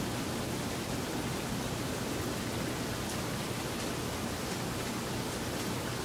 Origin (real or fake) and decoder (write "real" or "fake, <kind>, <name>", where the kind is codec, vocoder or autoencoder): real